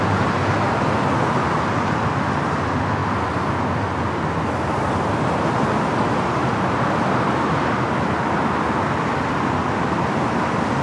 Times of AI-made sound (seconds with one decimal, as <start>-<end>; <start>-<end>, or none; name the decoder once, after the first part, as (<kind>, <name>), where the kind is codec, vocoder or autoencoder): none